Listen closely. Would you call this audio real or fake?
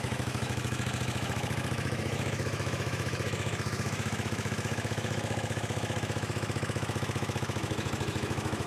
fake